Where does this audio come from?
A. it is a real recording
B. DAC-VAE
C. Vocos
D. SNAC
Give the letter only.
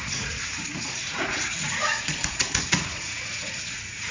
C